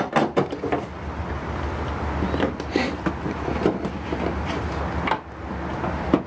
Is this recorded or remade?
recorded